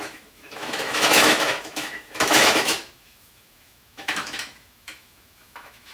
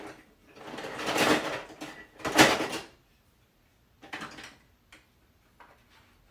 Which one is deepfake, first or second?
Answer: first